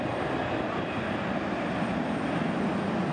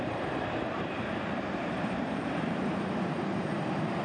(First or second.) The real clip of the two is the first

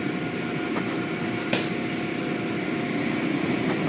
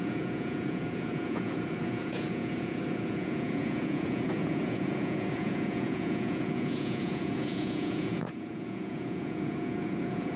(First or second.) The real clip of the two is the first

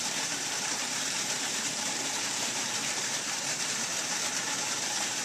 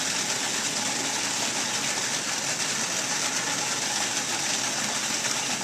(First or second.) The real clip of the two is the second